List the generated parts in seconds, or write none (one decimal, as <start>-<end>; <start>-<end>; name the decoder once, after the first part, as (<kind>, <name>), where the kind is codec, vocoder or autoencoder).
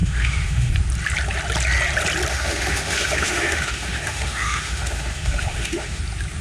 0.0-0.7 (autoencoder, DAC-VAE); 2.3-6.0